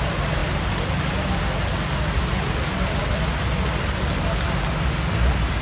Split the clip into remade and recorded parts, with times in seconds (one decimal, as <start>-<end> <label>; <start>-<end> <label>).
0.0-5.6 recorded